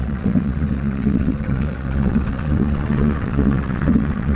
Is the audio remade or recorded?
remade